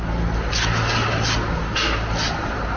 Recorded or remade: recorded